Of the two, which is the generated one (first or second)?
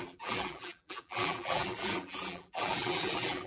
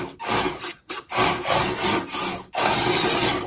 first